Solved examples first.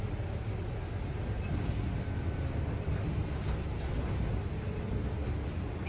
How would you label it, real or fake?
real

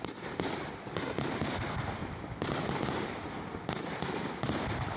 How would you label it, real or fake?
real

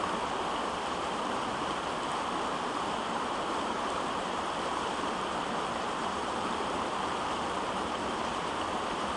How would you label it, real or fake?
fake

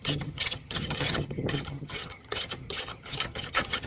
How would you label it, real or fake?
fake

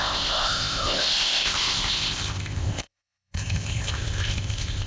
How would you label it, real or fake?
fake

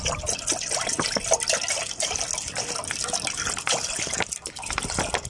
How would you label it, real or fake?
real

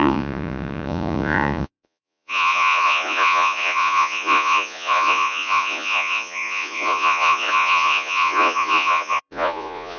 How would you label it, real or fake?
fake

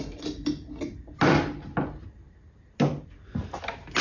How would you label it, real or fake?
real